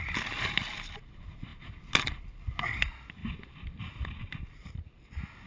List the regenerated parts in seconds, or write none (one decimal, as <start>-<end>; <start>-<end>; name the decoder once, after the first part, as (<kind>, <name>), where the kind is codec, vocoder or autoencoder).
none